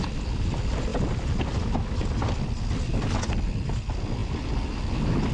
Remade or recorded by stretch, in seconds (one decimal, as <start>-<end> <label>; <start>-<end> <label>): 0.0-5.3 recorded